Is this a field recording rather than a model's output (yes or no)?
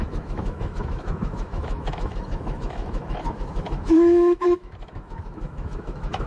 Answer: no